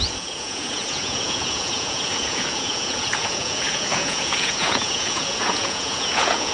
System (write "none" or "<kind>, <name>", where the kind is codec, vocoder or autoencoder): vocoder, Vocos